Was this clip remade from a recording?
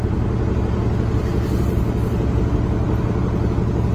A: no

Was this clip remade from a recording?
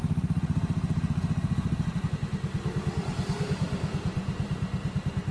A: yes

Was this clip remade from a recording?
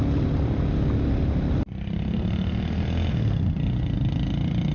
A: no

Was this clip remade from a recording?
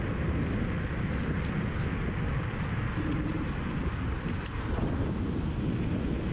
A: no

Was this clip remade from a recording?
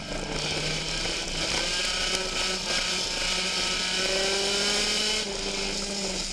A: no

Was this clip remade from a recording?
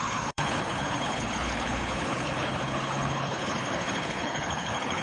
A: yes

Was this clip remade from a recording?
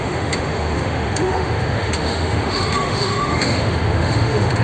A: yes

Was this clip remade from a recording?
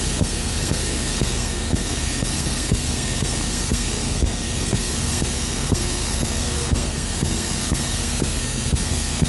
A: yes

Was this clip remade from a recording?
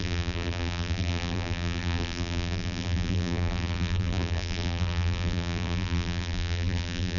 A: yes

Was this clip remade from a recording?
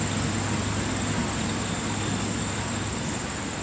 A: no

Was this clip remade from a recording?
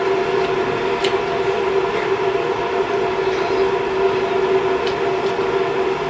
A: no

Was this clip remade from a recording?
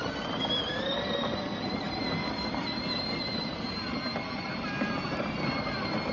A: no